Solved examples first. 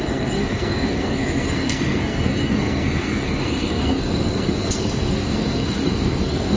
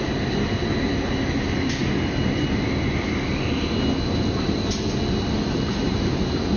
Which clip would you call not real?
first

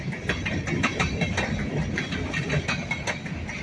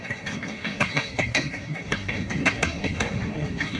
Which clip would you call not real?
second